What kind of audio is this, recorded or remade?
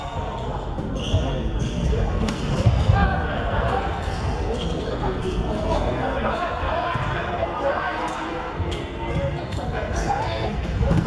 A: remade